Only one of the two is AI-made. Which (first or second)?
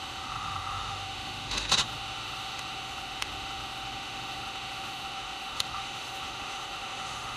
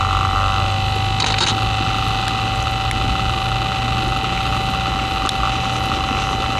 first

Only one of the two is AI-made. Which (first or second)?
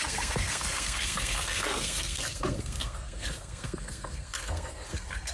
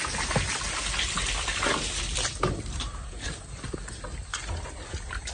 first